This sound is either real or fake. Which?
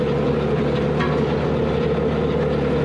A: real